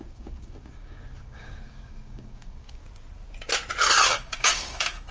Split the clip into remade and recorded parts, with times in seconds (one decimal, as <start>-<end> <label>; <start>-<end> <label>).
0.0-2.8 remade; 2.8-4.1 recorded; 4.1-5.1 remade